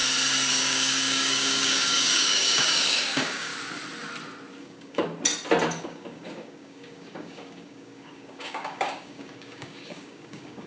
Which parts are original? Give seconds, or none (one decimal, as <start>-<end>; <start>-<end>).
0.0-0.5; 3.5-4.6; 5.0-5.8